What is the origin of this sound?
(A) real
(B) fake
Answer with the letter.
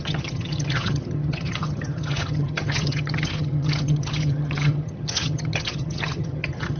B